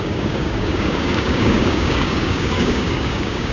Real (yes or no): no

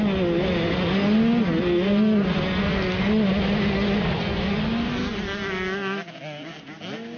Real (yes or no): yes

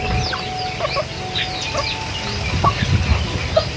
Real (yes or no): yes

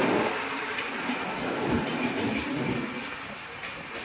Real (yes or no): yes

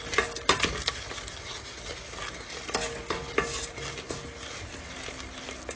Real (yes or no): yes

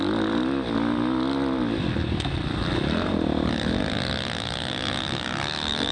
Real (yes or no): yes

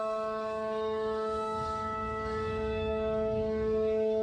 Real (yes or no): no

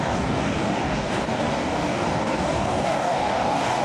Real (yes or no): no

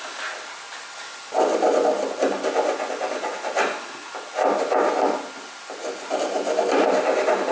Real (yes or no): yes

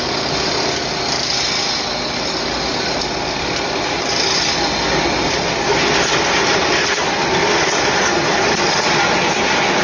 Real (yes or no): yes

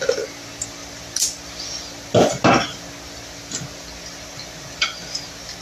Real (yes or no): yes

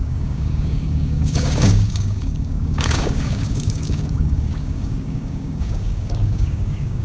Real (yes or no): no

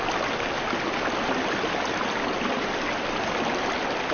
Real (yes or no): yes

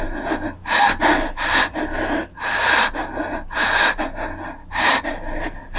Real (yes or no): yes